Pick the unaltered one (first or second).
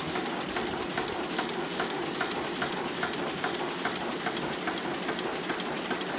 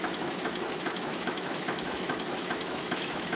first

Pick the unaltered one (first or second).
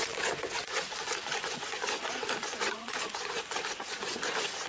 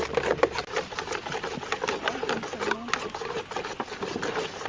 second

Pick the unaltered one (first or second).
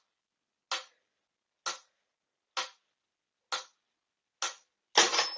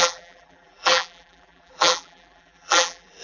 first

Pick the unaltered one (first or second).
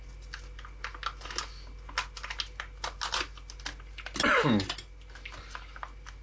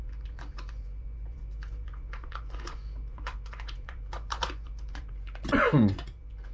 first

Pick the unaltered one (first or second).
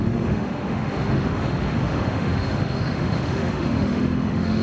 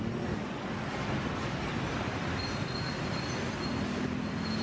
second